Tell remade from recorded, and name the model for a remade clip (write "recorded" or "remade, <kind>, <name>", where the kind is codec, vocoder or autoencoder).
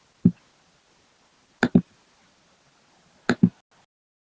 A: recorded